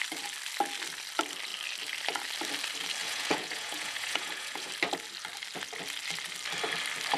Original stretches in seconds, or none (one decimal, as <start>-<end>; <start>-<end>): 0.0-3.0; 4.7-7.2